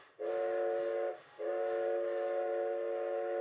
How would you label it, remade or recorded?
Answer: remade